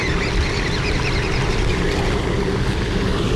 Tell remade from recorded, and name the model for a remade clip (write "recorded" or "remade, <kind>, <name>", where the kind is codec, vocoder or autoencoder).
recorded